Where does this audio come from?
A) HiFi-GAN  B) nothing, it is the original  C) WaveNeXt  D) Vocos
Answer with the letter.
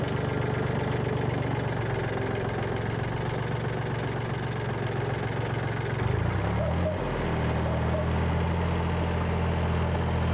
B